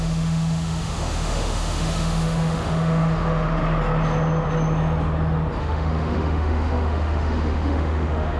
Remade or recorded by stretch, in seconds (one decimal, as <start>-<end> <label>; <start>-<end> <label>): 0.0-3.6 remade; 3.6-5.6 recorded; 5.6-8.4 remade